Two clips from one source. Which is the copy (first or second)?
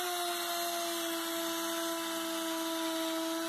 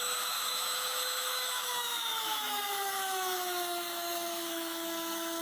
second